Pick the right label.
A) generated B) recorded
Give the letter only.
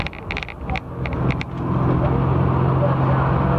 B